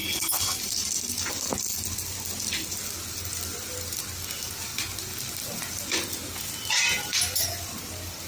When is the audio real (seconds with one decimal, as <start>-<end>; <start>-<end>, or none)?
1.3-8.3